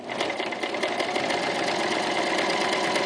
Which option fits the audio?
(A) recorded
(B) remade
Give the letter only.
A